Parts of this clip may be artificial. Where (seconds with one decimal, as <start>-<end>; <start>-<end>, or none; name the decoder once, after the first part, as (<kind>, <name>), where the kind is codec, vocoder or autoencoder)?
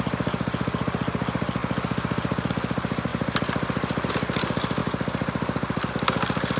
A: none